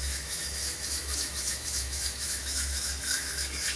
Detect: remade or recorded remade